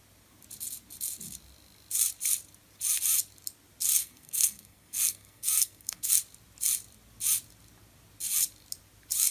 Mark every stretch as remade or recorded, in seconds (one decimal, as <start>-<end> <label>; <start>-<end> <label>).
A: 0.0-4.0 recorded; 4.0-6.1 remade; 6.1-9.3 recorded